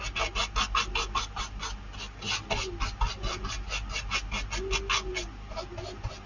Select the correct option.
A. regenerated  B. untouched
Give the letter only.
B